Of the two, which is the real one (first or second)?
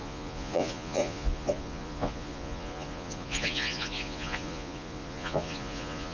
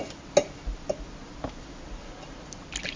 second